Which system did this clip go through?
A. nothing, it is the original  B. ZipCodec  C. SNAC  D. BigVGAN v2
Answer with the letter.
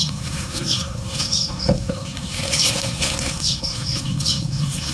C